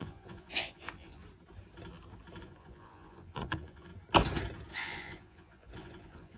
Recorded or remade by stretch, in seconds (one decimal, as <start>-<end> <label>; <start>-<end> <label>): 0.0-1.2 remade; 1.2-2.4 recorded; 2.4-3.9 remade; 3.9-4.7 recorded; 4.7-6.4 remade